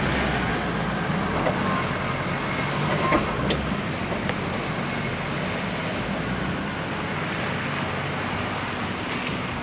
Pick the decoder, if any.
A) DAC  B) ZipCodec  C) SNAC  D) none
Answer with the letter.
D